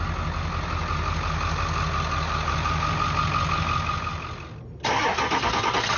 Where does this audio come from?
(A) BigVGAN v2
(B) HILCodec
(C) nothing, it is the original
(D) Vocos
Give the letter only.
C